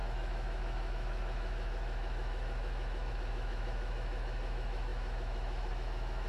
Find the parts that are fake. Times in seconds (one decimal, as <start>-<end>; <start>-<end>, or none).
0.0-6.3